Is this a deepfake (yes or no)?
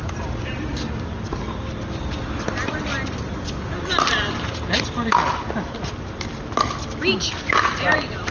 no